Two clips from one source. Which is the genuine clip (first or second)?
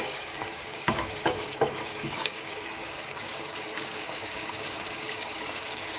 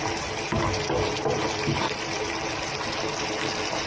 second